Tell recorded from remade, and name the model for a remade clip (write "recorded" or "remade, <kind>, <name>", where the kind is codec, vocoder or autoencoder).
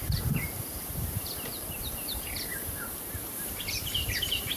remade, vocoder, BigVGAN v2